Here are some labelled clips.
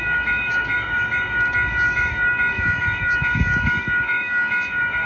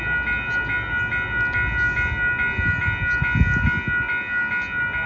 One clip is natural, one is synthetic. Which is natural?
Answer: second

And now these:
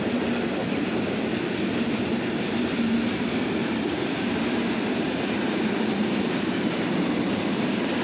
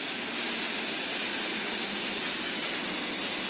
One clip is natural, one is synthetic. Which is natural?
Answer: second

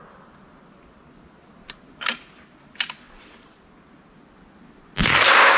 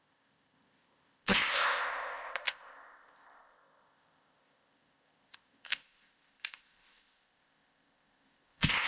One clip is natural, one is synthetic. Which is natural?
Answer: first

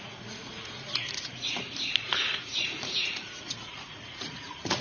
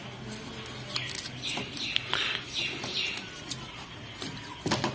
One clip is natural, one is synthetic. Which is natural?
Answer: second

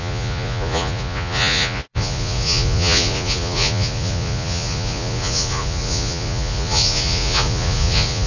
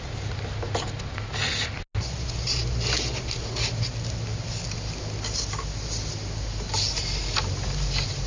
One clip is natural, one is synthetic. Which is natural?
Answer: second